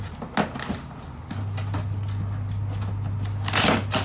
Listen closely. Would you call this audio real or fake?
real